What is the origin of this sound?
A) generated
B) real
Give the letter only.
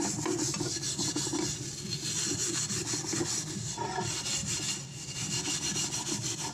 B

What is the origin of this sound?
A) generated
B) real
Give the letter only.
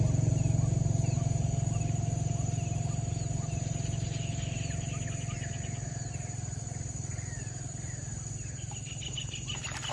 B